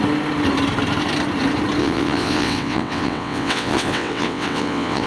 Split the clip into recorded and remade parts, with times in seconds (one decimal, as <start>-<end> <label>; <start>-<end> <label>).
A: 0.0-1.8 recorded; 1.8-5.1 remade